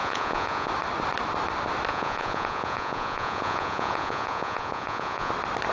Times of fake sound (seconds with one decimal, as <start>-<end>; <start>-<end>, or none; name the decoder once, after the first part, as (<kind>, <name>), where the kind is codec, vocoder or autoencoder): 0.0-0.7 (vocoder, Vocos); 1.9-5.3